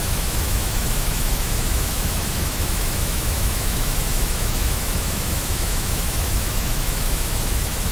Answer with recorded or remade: remade